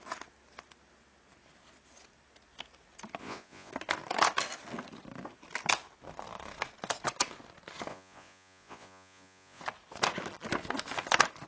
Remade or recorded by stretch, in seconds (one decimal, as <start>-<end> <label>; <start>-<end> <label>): 0.0-3.2 recorded; 3.2-3.7 remade; 3.7-7.9 recorded; 7.9-9.6 remade; 9.6-11.5 recorded

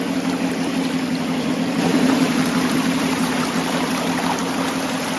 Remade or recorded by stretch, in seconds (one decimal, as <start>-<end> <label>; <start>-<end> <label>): 0.0-1.9 recorded; 1.9-4.0 remade; 4.0-5.2 recorded